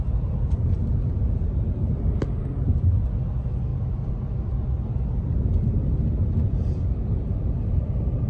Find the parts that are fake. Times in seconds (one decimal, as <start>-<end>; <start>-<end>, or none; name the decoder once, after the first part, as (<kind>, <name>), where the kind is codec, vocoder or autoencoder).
none